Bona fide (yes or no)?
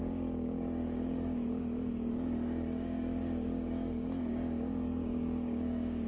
no